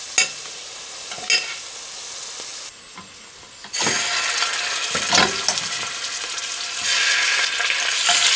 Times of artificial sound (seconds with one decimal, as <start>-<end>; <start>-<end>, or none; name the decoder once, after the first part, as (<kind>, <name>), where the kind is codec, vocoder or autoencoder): none